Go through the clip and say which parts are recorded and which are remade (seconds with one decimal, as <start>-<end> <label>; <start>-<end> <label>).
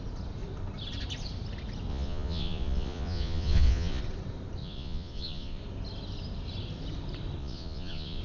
0.0-1.9 recorded; 1.9-4.0 remade; 4.0-4.6 recorded; 4.6-5.6 remade; 5.6-7.4 recorded; 7.4-8.2 remade